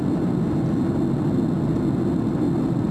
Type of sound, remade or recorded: recorded